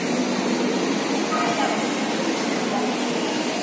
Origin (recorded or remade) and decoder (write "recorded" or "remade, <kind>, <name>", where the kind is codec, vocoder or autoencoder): recorded